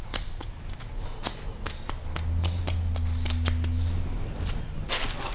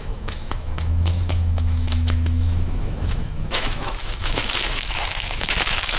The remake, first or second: second